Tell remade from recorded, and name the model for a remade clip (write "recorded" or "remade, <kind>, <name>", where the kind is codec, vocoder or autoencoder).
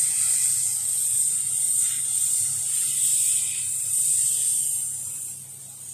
recorded